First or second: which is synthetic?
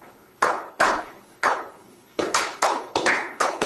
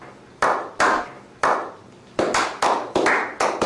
first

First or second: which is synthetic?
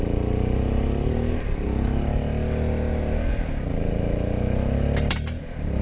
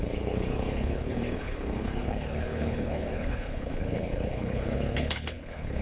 second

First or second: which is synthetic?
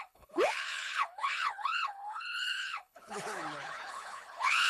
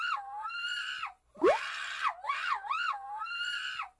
first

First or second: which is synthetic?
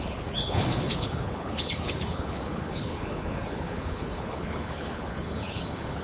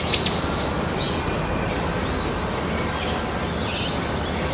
first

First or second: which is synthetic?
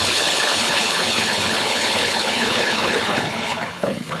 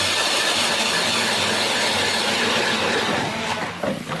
first